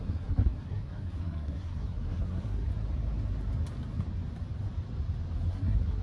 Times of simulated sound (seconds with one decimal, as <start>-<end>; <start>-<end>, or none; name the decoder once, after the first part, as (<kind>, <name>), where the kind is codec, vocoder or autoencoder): 0.0-2.7 (codec, SNAC); 5.5-6.0

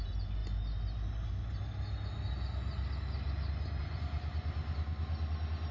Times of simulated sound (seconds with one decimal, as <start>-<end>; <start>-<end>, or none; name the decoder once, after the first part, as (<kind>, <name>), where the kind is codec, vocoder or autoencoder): none

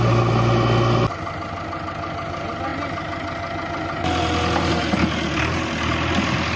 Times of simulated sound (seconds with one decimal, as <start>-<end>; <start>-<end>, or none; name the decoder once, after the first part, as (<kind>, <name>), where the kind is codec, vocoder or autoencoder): none

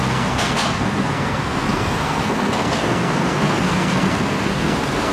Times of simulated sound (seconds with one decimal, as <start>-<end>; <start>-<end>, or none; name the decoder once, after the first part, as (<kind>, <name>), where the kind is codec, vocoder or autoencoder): 0.0-5.1 (codec, SNAC)

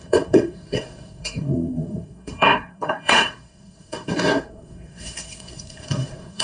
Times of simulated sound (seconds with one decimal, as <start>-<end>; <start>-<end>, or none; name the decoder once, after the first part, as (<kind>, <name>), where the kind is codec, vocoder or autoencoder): 0.0-6.4 (codec, SNAC)

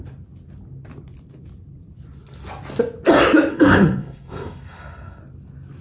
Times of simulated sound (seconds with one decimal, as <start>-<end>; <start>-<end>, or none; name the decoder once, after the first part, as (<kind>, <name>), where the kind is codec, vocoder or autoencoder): 3.5-5.2 (codec, SNAC)

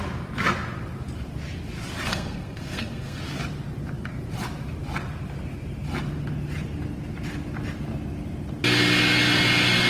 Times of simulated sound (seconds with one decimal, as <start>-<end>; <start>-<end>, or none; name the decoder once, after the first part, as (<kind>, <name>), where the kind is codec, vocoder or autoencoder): 2.1-3.2 (codec, SNAC)

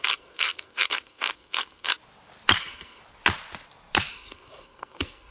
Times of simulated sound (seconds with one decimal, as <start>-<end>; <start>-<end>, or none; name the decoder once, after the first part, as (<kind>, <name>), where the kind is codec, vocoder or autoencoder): 0.0-2.0 (codec, SNAC); 2.6-3.0; 4.1-5.3